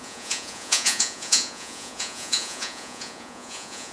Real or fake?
fake